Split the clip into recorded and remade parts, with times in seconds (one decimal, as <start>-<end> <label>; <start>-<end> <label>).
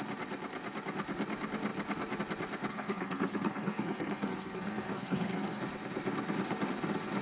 0.0-2.7 recorded; 2.7-5.6 remade; 5.6-7.2 recorded